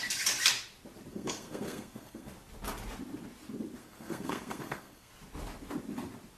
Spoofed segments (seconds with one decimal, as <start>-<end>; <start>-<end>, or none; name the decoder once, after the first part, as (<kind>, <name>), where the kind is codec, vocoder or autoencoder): 1.1-2.3 (codec, SNAC); 3.8-5.1